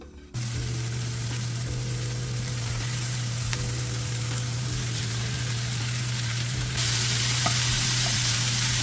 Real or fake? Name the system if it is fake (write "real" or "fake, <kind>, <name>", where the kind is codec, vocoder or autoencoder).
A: fake, vocoder, BigVGAN v2